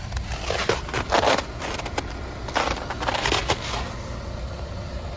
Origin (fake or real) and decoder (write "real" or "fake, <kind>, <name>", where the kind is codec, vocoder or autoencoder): real